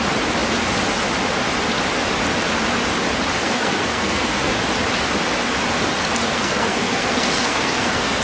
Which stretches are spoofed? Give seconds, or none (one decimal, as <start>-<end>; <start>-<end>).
3.4-4.5; 6.3-8.2